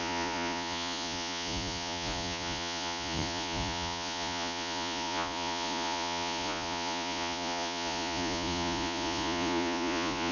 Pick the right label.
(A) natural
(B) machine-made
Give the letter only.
B